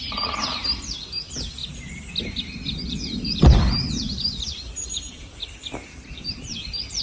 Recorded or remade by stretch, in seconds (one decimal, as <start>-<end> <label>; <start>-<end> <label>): 0.0-1.6 remade; 1.6-2.8 recorded; 2.8-7.0 remade